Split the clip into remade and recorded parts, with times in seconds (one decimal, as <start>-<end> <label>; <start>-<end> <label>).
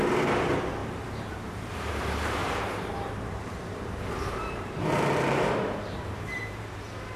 0.0-0.8 recorded; 0.8-1.9 remade; 1.9-2.4 recorded; 2.4-6.7 remade; 6.7-7.2 recorded